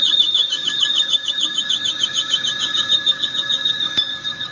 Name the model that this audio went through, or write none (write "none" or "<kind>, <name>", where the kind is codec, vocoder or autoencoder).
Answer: codec, DAC